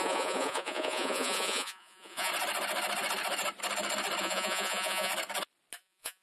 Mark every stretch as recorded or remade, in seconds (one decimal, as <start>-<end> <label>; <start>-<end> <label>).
0.0-2.3 remade; 2.3-4.2 recorded; 4.2-5.1 remade; 5.1-5.8 recorded; 5.8-6.2 remade